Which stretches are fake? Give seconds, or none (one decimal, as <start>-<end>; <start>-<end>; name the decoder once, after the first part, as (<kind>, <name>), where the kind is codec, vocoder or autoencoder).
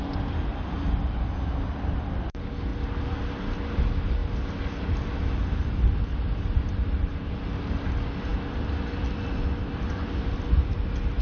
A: 8.3-10.7 (vocoder, BigVGAN v2)